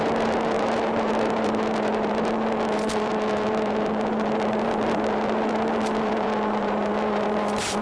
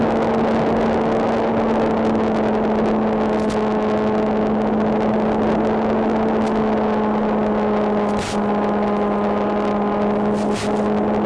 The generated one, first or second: first